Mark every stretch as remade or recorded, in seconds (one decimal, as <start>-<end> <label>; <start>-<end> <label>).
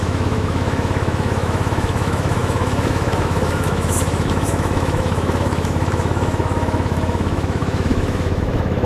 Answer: 0.0-8.8 remade